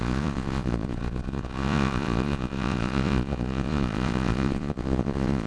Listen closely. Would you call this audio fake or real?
fake